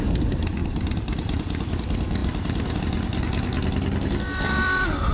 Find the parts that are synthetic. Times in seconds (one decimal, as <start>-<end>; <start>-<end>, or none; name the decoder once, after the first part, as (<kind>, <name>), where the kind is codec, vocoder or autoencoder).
0.6-1.7 (vocoder, BigVGAN v2); 2.2-2.8